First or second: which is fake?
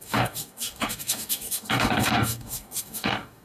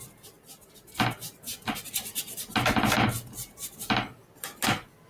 first